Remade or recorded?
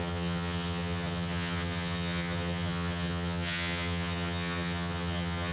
remade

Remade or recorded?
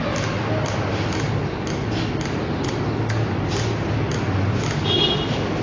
recorded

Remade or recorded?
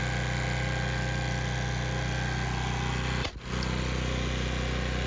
recorded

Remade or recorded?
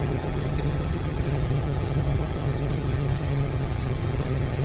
remade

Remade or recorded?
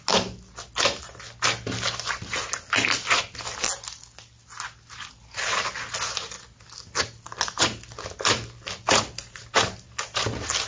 recorded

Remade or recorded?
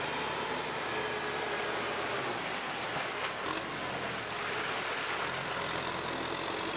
recorded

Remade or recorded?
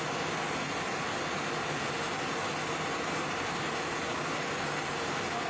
recorded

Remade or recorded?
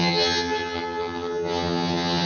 remade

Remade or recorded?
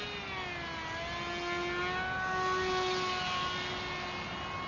recorded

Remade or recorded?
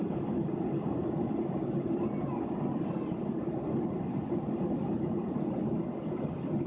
recorded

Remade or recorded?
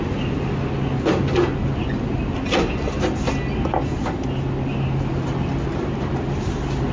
recorded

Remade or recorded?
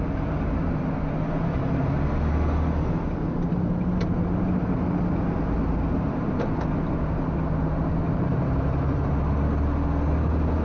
recorded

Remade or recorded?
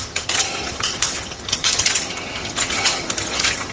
remade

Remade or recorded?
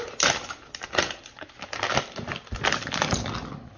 recorded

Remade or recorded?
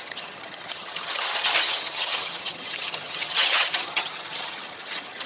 remade